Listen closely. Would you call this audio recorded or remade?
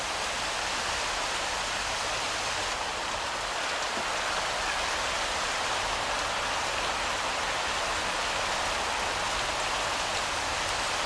recorded